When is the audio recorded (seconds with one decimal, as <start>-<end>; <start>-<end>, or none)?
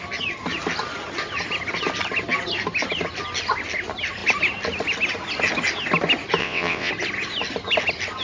0.0-6.4; 6.9-8.2